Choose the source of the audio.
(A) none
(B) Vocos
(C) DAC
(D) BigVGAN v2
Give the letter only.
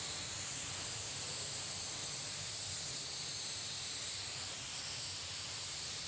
D